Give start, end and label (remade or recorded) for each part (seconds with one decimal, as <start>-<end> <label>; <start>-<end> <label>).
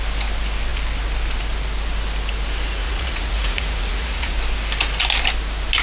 0.0-2.8 recorded; 2.8-4.3 remade; 4.3-5.8 recorded